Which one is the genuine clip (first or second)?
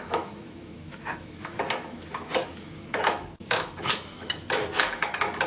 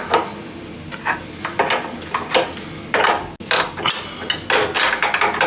second